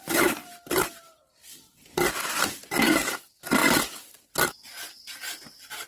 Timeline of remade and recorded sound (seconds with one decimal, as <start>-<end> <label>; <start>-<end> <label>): 0.0-0.5 remade; 0.5-5.9 recorded